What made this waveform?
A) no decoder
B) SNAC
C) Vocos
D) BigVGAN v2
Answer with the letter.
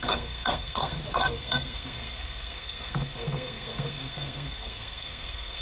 B